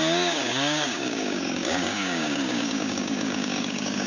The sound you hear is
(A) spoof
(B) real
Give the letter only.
A